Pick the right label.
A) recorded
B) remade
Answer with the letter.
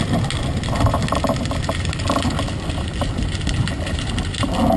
A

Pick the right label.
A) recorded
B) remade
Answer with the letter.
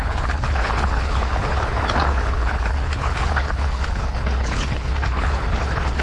B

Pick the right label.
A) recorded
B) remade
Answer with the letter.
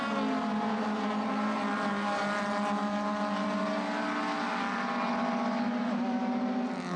A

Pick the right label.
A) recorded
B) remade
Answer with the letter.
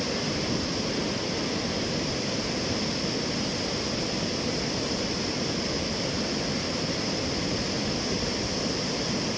A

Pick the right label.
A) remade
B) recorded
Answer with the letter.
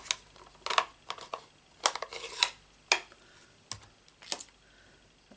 B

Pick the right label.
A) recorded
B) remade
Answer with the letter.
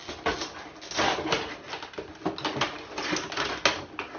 A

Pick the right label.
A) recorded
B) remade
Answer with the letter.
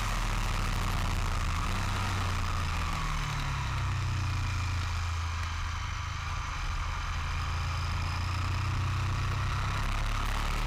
A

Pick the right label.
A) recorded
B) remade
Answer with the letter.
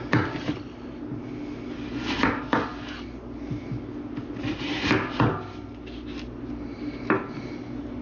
A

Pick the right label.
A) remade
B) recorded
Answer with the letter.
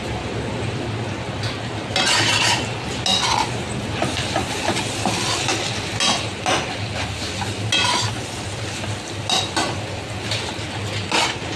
B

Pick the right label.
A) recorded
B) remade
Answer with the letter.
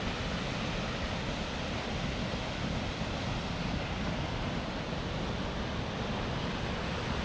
A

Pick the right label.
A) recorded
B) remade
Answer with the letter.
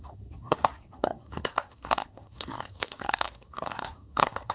B